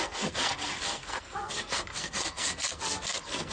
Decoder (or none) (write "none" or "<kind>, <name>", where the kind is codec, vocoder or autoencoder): codec, SNAC